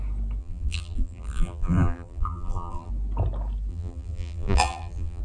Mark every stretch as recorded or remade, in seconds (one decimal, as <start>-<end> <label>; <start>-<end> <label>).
0.0-0.4 recorded; 0.4-2.9 remade; 2.9-3.7 recorded; 3.7-5.2 remade